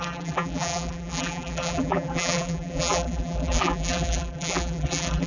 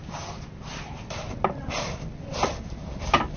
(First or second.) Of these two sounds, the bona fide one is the second